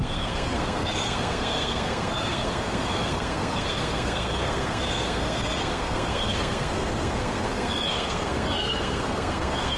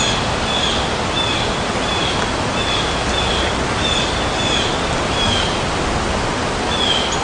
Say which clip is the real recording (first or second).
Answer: second